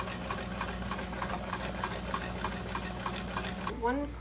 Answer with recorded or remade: recorded